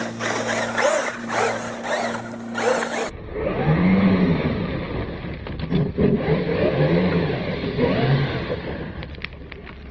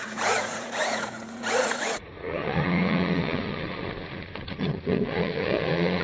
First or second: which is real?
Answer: first